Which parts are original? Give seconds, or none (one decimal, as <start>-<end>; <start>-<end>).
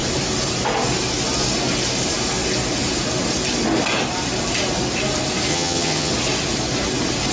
0.0-5.5; 6.1-7.3